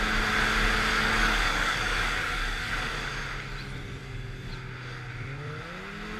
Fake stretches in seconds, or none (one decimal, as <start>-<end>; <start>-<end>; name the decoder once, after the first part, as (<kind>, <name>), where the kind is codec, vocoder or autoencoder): 0.9-3.1 (codec, DAC); 4.0-4.5